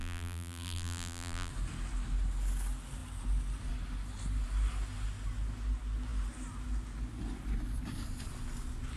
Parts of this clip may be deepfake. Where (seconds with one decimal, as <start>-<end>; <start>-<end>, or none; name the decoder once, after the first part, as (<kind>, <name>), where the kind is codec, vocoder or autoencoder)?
0.0-1.5 (vocoder, BigVGAN v2)